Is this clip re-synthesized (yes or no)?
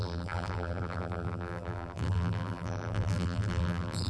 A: yes